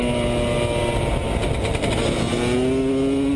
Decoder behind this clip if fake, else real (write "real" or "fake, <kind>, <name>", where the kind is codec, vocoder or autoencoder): real